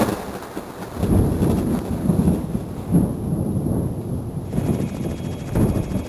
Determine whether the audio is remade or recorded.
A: recorded